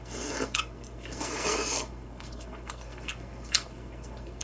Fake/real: fake